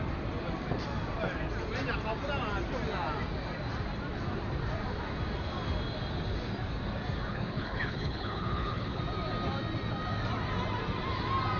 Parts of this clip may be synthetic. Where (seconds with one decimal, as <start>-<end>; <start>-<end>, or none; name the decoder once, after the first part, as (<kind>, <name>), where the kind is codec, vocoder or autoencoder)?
7.3-9.0 (codec, HILCodec)